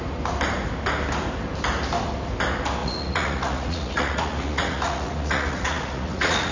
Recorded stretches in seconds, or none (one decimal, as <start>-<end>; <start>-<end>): 0.0-2.8